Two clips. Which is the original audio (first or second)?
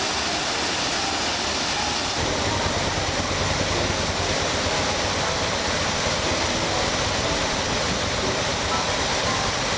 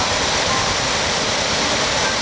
first